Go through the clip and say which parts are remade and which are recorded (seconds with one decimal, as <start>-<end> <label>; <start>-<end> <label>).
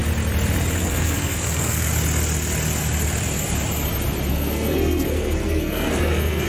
0.0-0.8 recorded; 0.8-1.9 remade; 1.9-4.3 recorded; 4.3-6.5 remade